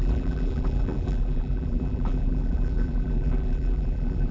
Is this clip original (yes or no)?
no